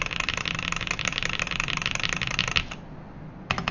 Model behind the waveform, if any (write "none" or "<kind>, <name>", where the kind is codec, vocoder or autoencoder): none